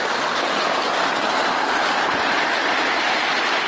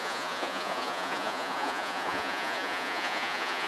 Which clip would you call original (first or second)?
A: first